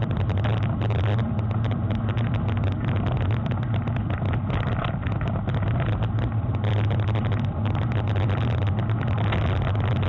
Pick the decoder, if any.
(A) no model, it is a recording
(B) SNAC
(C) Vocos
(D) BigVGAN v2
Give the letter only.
A